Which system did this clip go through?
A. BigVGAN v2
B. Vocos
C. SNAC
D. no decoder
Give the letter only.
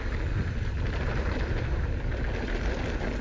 D